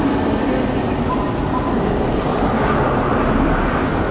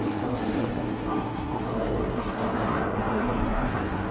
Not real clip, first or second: second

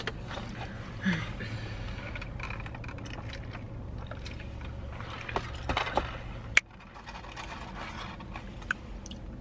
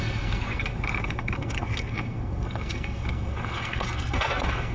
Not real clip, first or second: second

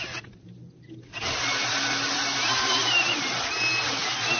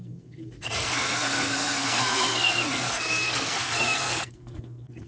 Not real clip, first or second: second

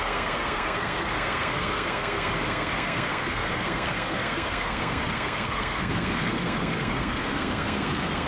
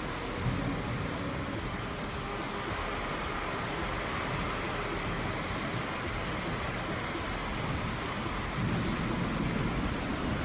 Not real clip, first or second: first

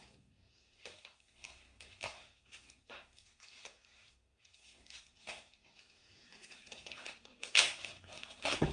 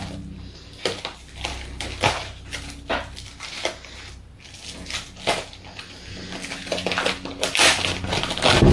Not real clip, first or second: first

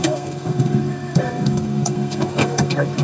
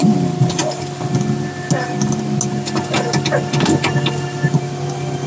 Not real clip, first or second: first